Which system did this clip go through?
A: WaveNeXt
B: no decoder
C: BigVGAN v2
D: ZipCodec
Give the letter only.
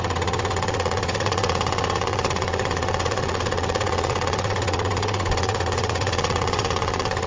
A